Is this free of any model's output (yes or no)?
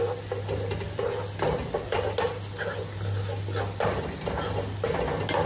yes